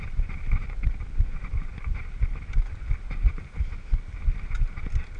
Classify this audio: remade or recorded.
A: recorded